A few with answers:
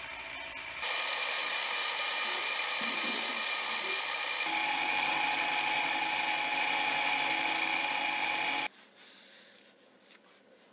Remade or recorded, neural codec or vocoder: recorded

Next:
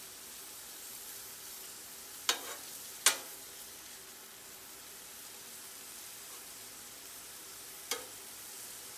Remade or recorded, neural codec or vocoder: recorded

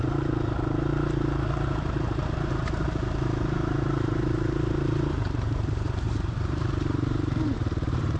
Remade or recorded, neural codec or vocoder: remade, vocoder, BigVGAN v2